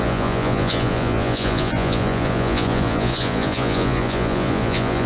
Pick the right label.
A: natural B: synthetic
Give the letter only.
B